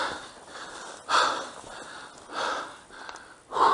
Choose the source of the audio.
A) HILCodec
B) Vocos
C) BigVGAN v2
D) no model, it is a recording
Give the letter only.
D